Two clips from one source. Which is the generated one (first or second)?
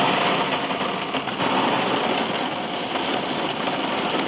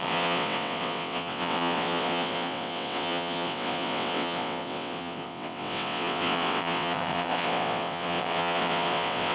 second